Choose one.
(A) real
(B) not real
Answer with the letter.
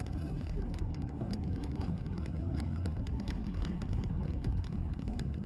B